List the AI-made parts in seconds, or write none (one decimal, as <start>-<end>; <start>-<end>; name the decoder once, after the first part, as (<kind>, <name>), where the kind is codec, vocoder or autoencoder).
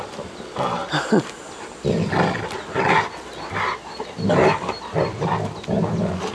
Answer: none